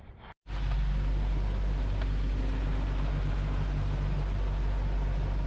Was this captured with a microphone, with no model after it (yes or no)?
yes